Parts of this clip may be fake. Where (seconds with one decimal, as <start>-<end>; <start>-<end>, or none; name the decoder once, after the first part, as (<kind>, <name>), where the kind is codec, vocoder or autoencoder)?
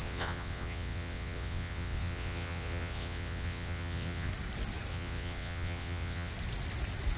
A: 0.0-4.3 (vocoder, WaveNeXt); 4.9-6.3